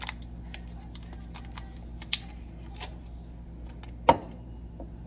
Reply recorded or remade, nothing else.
recorded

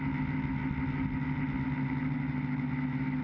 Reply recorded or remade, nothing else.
recorded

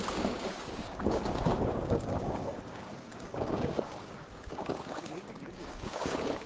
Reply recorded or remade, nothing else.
remade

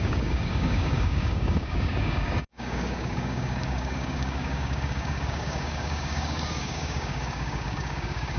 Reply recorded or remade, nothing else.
remade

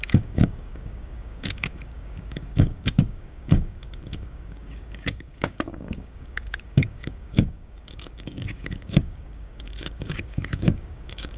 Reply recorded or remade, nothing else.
remade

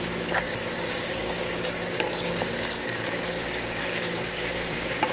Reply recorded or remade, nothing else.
remade